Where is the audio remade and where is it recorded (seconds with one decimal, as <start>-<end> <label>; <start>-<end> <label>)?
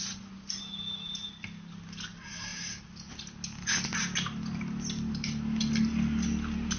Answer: 0.0-6.8 recorded